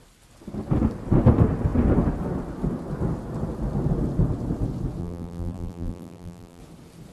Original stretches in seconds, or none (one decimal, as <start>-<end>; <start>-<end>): 0.0-5.0; 6.6-7.1